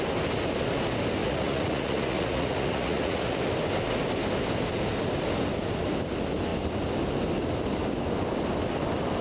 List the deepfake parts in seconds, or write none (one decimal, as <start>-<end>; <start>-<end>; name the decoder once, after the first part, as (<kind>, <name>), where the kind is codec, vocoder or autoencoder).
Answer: 1.2-3.4 (vocoder, Vocos)